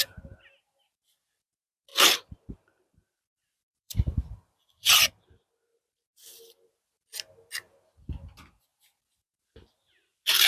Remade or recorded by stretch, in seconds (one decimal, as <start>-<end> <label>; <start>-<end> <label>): 0.0-1.9 recorded; 1.9-4.4 remade; 4.4-5.7 recorded; 5.7-7.8 remade; 7.8-10.5 recorded